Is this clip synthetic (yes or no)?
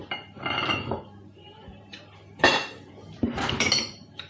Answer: yes